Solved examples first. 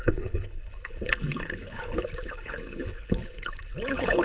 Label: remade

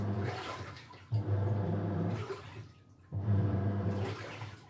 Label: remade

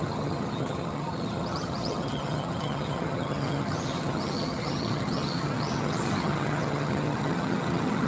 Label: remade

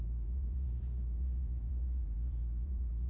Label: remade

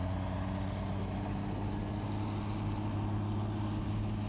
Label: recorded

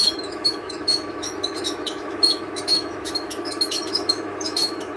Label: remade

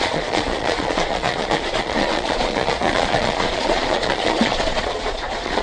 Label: remade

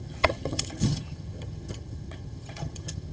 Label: remade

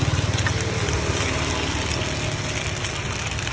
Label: recorded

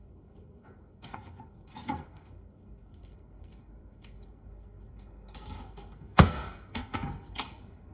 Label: remade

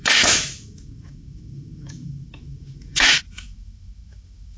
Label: remade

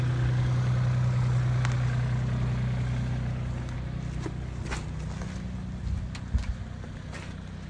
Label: recorded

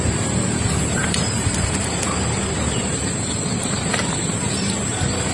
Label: remade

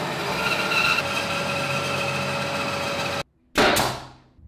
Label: recorded